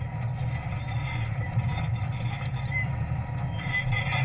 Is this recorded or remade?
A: recorded